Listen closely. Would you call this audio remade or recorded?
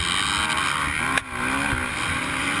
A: recorded